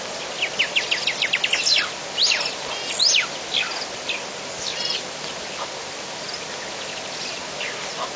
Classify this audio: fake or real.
real